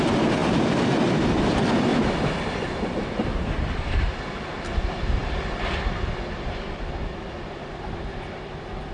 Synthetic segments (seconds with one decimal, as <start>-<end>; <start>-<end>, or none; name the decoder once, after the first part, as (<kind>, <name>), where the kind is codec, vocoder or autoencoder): 0.4-1.4 (vocoder, BigVGAN v2); 1.9-4.2